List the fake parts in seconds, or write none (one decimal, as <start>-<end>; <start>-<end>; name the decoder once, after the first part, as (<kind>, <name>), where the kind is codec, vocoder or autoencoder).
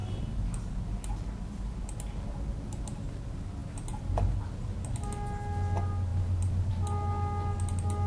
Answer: 0.0-0.7 (vocoder, BigVGAN v2); 3.6-4.4; 6.1-6.7